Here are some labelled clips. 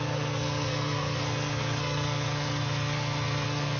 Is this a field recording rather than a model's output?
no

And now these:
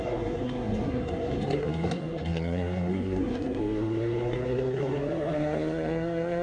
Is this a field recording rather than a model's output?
no